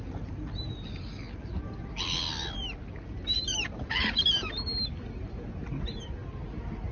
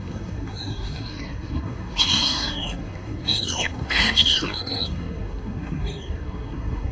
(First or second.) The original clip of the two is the first